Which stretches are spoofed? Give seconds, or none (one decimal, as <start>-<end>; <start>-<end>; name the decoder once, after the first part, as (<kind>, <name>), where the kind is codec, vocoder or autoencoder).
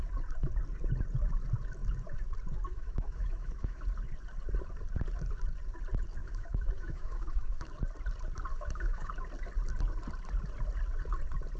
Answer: 2.7-3.8 (autoencoder, DAC-VAE); 6.2-7.7; 8.5-9.1